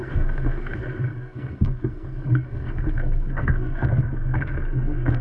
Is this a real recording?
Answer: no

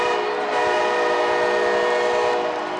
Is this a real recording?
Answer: yes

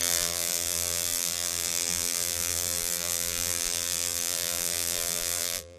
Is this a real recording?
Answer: no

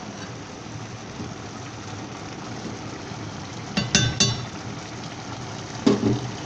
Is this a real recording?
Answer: yes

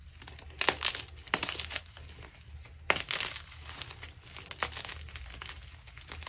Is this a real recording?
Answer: yes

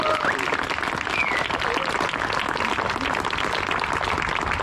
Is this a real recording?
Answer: yes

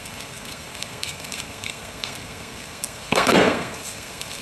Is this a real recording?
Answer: no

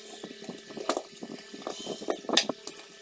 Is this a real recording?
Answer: yes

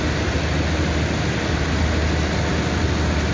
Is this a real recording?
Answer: yes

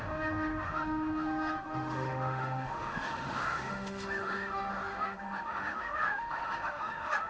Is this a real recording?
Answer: no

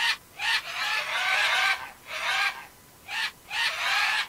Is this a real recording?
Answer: yes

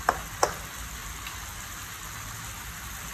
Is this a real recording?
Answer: yes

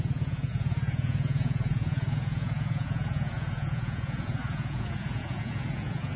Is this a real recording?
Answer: no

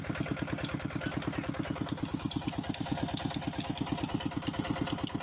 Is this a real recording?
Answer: yes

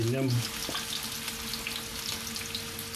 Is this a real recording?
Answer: yes